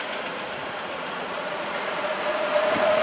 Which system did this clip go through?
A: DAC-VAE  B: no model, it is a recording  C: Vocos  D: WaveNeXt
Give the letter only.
C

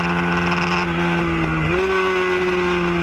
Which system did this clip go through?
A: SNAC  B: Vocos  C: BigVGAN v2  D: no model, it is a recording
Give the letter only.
D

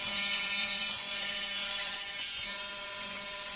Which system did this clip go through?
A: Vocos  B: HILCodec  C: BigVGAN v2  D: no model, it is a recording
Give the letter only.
A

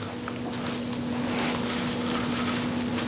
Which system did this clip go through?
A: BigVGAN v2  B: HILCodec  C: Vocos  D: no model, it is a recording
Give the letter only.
D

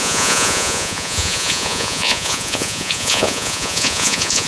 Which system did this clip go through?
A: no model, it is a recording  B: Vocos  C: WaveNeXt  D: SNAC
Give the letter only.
B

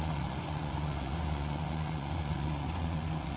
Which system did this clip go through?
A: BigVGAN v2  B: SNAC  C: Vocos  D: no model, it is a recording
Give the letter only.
C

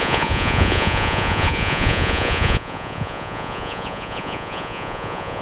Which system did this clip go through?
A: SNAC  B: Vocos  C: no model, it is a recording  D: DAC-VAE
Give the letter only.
B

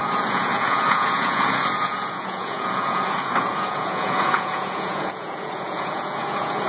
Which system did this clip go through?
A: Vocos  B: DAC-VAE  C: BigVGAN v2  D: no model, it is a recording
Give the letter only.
A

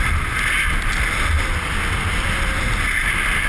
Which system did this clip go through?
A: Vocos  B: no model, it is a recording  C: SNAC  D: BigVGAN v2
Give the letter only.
B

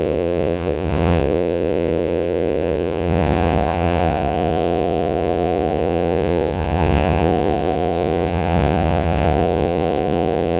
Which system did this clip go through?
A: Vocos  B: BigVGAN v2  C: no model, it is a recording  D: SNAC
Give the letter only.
A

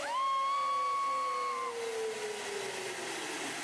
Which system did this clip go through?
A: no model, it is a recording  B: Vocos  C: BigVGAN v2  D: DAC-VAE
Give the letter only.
A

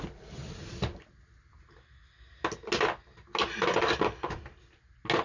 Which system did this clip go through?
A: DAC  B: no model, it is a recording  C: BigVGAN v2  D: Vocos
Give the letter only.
B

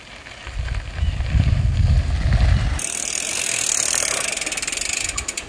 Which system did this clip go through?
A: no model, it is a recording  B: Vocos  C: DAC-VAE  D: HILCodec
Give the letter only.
A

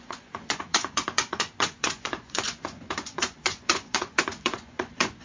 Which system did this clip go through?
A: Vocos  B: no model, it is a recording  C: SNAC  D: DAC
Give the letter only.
A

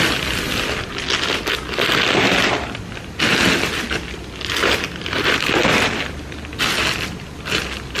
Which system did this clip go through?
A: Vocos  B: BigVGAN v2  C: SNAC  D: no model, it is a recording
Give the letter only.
D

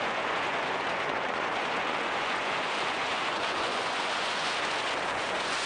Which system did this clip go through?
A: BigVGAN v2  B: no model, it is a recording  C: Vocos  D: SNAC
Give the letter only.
C